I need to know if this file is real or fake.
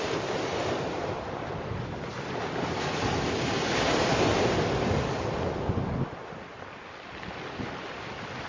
real